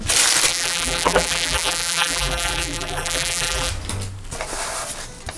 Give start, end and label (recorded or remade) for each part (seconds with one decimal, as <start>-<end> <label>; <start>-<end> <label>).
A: 0.0-0.5 recorded; 0.5-3.7 remade; 3.7-5.4 recorded